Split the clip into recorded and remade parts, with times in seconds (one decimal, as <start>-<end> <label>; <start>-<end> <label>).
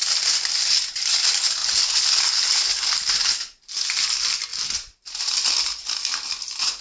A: 0.0-6.8 recorded